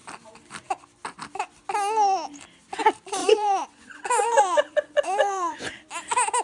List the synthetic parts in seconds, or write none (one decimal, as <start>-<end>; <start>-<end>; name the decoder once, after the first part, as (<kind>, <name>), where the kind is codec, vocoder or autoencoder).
3.2-5.7 (vocoder, Vocos)